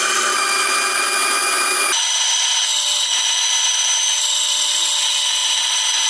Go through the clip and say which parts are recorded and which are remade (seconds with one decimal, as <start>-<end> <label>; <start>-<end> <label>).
0.0-6.1 recorded